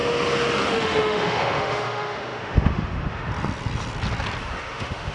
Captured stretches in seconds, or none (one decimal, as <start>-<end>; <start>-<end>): 0.0-0.7; 3.3-4.4